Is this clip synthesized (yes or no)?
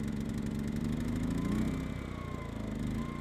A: no